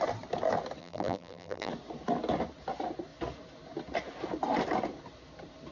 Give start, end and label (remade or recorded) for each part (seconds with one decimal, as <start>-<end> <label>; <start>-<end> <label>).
0.0-0.8 recorded; 0.8-1.7 remade; 1.7-5.7 recorded